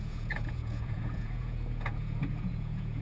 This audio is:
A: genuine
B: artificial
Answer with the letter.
B